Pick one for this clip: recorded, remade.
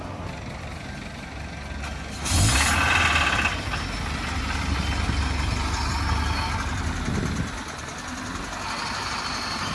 recorded